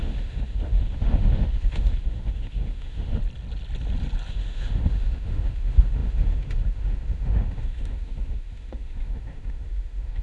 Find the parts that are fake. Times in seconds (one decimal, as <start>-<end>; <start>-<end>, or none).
0.0-3.2; 4.3-10.2